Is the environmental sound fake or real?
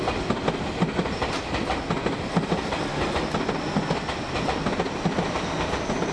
real